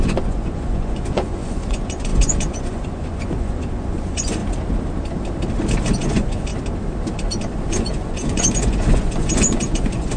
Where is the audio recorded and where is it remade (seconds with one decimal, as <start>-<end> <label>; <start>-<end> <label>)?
0.0-4.4 remade; 4.4-6.0 recorded; 6.0-6.5 remade; 6.5-7.7 recorded; 7.7-10.2 remade